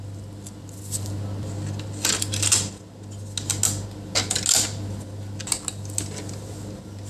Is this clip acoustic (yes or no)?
yes